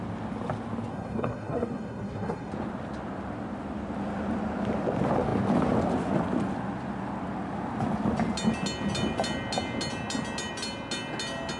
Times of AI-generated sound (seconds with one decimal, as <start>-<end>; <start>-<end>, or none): 0.9-2.5